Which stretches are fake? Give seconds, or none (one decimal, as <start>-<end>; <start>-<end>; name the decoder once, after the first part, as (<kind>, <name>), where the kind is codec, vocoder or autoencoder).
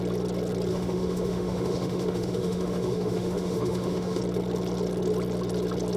0.7-4.2 (autoencoder, DAC-VAE)